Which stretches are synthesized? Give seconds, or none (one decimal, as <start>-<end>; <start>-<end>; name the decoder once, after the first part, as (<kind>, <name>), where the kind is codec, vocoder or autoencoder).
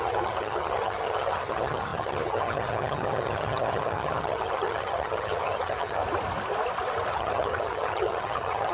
0.0-6.0 (vocoder, HiFi-GAN); 7.1-8.7